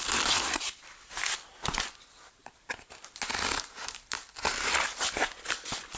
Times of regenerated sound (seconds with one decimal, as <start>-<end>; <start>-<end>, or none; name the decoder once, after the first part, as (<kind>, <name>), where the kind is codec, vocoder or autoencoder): 2.4-2.9 (vocoder, BigVGAN v2)